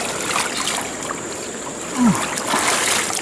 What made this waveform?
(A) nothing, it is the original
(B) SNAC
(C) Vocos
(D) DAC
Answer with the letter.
A